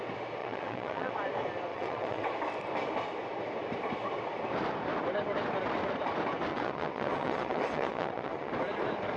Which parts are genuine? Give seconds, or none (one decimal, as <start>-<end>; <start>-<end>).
0.0-0.4; 1.1-1.7; 2.3-6.5; 8.5-9.2